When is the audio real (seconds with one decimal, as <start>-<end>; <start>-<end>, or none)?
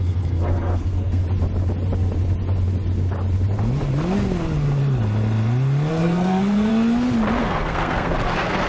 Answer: 1.2-5.9; 6.7-7.4